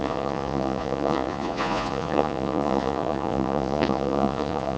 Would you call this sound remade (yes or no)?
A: yes